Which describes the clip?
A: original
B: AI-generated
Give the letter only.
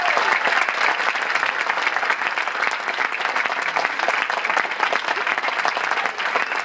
A